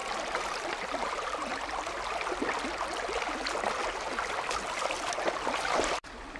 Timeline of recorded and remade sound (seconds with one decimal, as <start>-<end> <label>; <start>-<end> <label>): 0.0-6.4 recorded

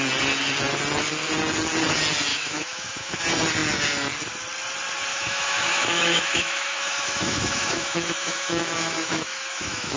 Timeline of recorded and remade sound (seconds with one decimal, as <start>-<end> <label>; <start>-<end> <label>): 0.0-2.3 recorded; 2.3-3.2 remade; 3.2-5.1 recorded; 5.1-10.0 remade

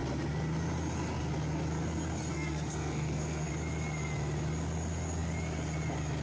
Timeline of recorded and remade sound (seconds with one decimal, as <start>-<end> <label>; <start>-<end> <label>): 0.0-2.3 recorded; 2.3-3.5 remade; 3.5-6.2 recorded

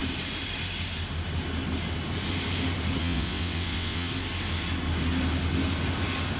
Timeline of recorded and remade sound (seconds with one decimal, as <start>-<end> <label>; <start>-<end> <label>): 0.0-3.0 recorded; 3.0-4.1 remade; 4.1-6.4 recorded

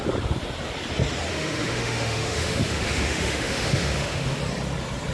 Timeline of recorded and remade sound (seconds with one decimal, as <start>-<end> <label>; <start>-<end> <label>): 0.0-1.3 recorded; 1.3-4.4 remade; 4.4-5.1 recorded

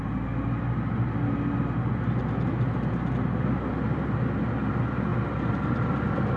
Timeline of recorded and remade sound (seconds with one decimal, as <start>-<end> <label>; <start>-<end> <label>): 0.0-3.9 recorded; 3.9-4.5 remade; 4.5-6.4 recorded